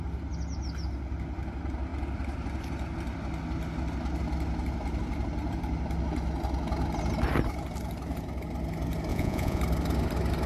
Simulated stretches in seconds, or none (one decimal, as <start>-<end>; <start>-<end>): 9.1-9.6